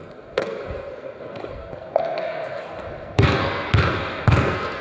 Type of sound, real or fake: fake